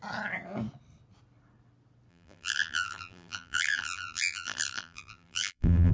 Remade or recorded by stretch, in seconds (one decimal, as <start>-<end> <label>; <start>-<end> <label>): 0.0-2.1 recorded; 2.1-5.9 remade